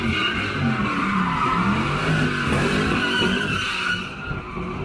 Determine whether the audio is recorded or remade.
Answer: recorded